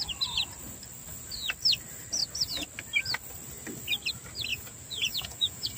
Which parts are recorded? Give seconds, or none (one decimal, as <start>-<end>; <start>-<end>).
0.0-4.5